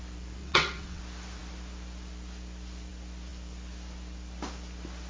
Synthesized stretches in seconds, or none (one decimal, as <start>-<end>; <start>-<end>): 0.4-1.0